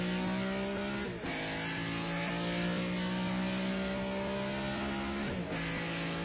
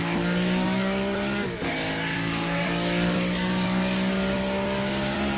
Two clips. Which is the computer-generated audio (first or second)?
second